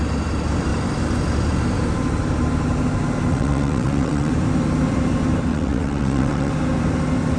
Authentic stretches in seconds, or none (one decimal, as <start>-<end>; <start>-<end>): 0.0-3.3; 4.3-5.5; 6.5-7.4